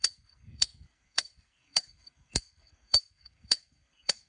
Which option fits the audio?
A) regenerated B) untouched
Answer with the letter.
A